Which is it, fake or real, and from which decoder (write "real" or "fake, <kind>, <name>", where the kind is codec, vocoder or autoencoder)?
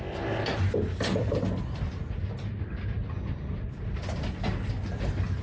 real